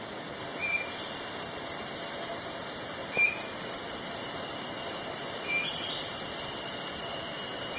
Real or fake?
real